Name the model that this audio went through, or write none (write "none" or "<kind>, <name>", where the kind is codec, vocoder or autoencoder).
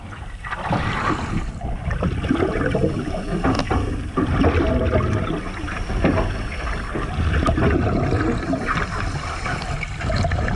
none